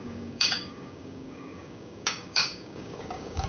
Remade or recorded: remade